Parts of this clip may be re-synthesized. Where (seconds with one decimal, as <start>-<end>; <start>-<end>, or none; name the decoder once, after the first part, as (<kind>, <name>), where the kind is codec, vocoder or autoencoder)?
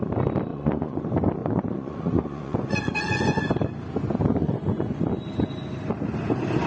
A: 0.5-1.0 (vocoder, Vocos); 1.4-3.4; 4.4-5.0